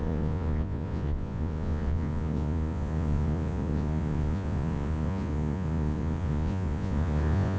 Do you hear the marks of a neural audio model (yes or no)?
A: yes